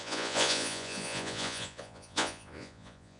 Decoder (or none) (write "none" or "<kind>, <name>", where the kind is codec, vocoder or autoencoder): vocoder, Vocos